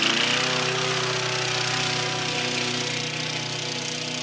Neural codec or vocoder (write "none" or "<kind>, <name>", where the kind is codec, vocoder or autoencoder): none